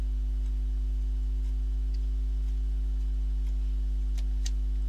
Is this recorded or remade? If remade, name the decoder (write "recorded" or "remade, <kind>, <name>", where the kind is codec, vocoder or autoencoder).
recorded